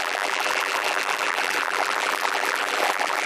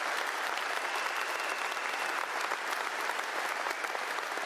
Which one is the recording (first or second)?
second